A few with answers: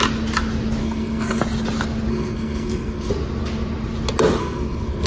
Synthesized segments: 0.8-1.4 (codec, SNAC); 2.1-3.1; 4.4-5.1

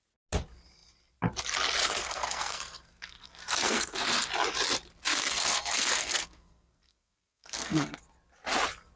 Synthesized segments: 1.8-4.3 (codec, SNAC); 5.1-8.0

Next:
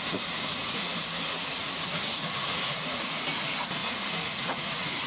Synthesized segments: 0.0-5.1 (vocoder, Vocos)